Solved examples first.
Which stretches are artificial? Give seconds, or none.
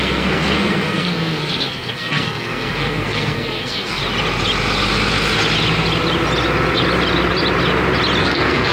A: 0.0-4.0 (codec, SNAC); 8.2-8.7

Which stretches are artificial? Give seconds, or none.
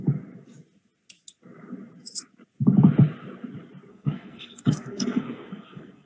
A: 3.9-6.1 (codec, SNAC)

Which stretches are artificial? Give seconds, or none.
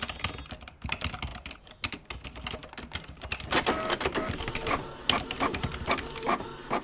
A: none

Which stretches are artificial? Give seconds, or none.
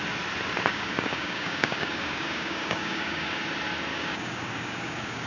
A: 0.7-3.4 (codec, DAC); 3.9-5.3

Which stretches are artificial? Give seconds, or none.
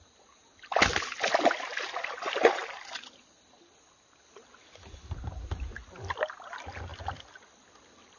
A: none